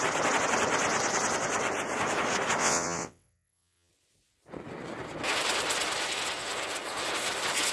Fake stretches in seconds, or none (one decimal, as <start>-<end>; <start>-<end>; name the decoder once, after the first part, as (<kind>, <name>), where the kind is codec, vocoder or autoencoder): 2.6-3.9 (vocoder, WaveNeXt)